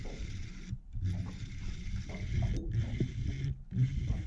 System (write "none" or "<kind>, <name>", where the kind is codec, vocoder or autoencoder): none